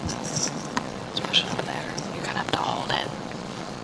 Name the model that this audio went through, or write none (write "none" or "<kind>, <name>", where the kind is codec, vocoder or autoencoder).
vocoder, Vocos